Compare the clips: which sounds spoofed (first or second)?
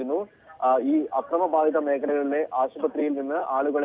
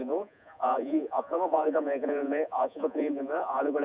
second